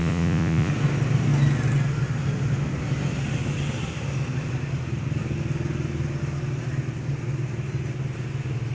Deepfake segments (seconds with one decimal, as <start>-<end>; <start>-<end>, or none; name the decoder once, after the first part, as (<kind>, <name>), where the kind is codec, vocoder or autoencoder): 0.0-0.7 (vocoder, Vocos)